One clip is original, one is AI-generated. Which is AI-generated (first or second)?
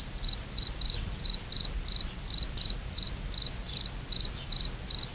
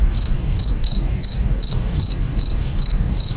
second